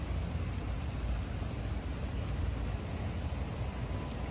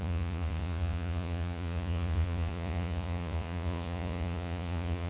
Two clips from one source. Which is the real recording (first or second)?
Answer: first